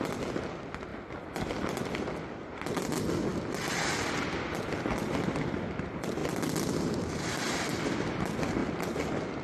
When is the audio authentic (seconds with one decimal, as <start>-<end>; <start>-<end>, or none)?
0.0-9.4